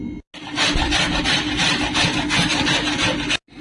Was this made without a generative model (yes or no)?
yes